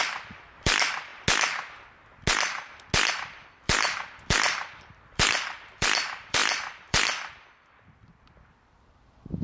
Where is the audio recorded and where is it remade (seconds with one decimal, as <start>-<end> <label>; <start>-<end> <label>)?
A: 0.0-1.1 remade; 1.1-3.1 recorded; 3.1-9.4 remade